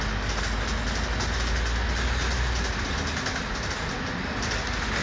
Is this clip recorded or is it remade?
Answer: recorded